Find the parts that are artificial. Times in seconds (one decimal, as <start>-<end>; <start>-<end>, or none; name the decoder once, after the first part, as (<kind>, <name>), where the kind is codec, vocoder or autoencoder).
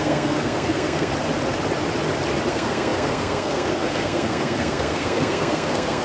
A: 0.0-1.1 (codec, SNAC); 2.5-6.0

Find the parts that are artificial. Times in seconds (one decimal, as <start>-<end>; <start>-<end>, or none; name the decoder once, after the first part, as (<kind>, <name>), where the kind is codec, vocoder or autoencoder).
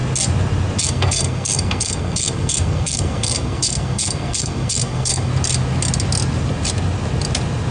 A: 0.8-5.3 (codec, SNAC)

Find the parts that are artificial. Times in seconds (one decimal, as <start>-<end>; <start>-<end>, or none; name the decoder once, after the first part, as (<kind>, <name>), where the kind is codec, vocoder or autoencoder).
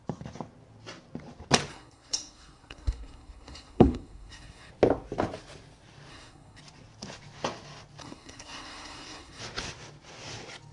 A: 1.7-4.7 (codec, SNAC); 6.1-6.6; 8.0-9.4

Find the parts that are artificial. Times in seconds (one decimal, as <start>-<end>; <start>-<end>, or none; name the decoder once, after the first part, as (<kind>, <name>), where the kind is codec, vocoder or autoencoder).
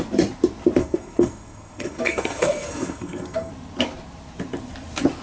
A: 0.8-3.5 (codec, SNAC)